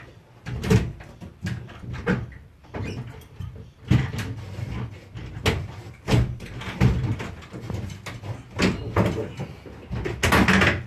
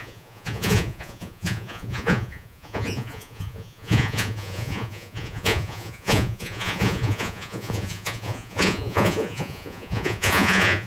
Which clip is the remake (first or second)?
second